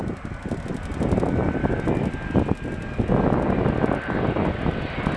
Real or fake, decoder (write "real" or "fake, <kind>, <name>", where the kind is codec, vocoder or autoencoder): real